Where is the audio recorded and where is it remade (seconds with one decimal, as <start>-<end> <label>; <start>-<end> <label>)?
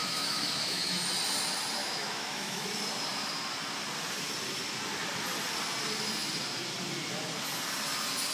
0.0-0.9 remade; 0.9-1.8 recorded; 1.8-2.7 remade; 2.7-8.3 recorded